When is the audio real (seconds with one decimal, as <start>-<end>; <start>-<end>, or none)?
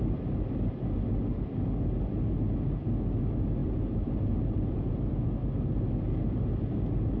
0.0-3.6; 4.9-7.2